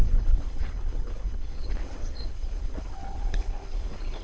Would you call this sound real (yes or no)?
no